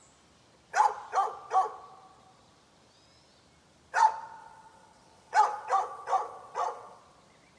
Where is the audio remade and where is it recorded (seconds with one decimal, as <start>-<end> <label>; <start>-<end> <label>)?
0.0-4.4 recorded; 4.4-7.0 remade; 7.0-7.6 recorded